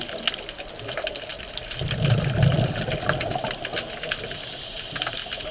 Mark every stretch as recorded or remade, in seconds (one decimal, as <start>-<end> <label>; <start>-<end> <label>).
0.0-5.5 recorded